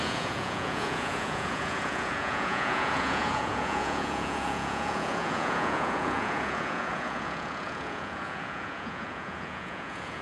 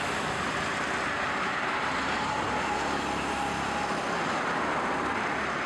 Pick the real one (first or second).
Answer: second